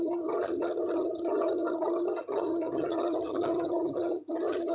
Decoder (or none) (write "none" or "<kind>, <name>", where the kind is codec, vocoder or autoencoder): vocoder, HiFi-GAN